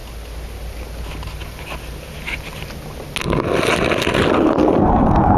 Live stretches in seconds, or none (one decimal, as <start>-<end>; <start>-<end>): 0.0-4.6